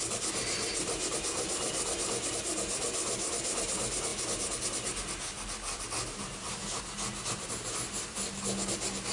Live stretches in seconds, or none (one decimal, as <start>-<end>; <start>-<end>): 0.0-9.1